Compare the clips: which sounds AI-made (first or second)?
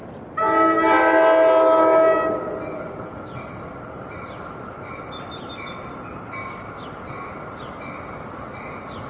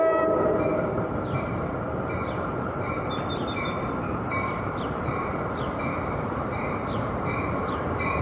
second